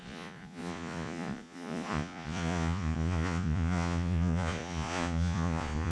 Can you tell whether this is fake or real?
fake